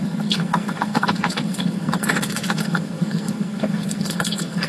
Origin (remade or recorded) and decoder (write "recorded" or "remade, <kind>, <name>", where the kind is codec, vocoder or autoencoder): remade, codec, SNAC